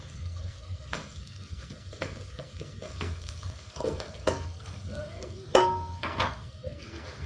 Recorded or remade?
remade